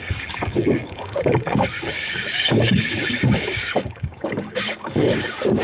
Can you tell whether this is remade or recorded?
remade